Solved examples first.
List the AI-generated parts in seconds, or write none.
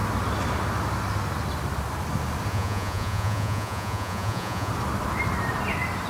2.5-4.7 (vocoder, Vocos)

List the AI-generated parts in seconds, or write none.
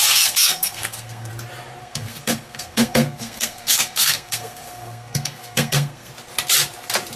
0.0-1.3 (codec, SNAC); 1.8-6.1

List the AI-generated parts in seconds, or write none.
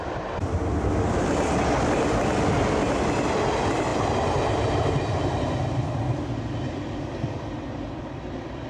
none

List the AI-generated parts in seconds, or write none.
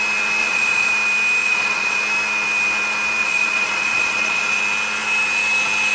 0.4-0.9 (vocoder, Vocos); 1.4-2.0; 3.2-4.6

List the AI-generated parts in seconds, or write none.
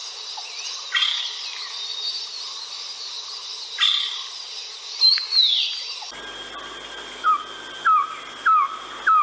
none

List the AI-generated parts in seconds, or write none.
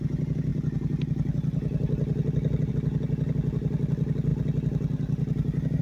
none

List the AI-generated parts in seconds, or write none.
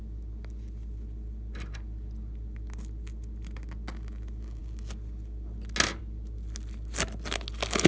none